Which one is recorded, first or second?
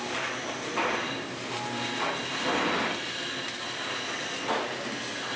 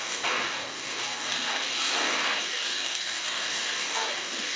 first